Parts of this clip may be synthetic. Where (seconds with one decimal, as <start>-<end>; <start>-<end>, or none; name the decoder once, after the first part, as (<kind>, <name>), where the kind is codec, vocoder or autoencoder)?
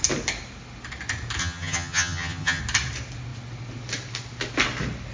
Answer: 1.4-2.6 (vocoder, HiFi-GAN)